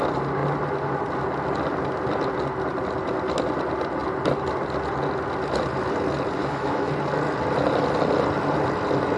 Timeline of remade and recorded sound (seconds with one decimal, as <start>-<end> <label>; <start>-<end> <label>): 0.0-6.4 recorded; 6.4-6.9 remade; 6.9-9.2 recorded